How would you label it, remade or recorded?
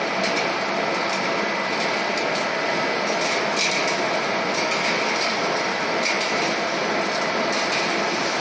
recorded